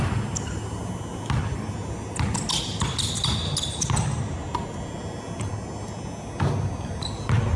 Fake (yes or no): no